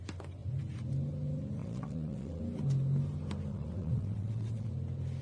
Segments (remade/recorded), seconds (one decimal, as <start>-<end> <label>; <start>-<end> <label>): 0.0-1.6 recorded; 1.6-2.4 remade; 2.4-3.5 recorded; 3.5-4.7 remade; 4.7-5.2 recorded